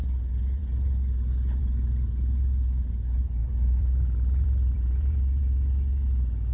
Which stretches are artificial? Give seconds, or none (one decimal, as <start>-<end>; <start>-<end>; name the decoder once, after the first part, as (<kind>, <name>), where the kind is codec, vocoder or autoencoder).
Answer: 3.4-5.4 (vocoder, BigVGAN v2)